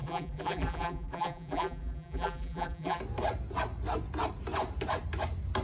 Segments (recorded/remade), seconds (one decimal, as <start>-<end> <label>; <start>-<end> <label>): 0.0-3.0 remade; 3.0-5.6 recorded